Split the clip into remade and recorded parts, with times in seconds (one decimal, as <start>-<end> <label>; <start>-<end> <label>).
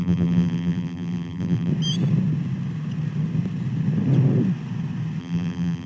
0.0-1.7 remade; 1.7-5.2 recorded; 5.2-5.9 remade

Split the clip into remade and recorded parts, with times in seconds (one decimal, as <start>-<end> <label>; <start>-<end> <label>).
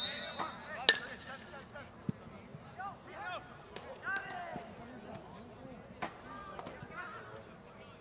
0.0-8.0 recorded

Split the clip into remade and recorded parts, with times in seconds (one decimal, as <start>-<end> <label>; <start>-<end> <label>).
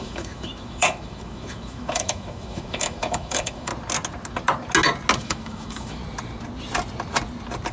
0.0-3.7 remade; 3.7-5.2 recorded; 5.2-6.0 remade; 6.0-7.7 recorded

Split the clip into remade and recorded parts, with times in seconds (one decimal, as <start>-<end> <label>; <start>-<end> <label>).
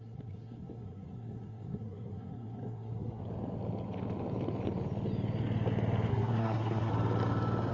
0.0-3.2 remade; 3.2-6.1 recorded; 6.1-6.9 remade; 6.9-7.7 recorded